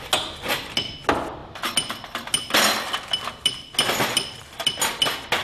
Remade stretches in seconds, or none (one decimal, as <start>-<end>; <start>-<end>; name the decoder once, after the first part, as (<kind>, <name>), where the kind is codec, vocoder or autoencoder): none